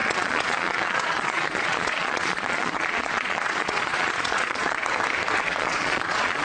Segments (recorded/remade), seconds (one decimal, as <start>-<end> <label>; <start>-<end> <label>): 0.0-4.8 remade; 4.8-5.4 recorded; 5.4-6.4 remade